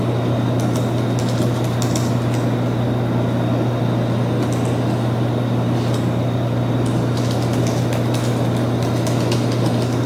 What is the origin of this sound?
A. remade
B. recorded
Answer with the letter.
B